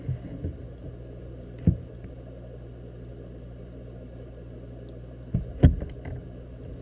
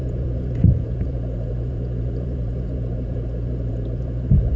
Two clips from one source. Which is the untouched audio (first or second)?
first